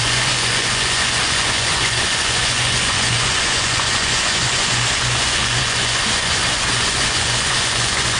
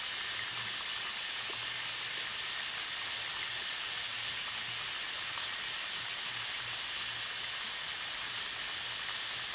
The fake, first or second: first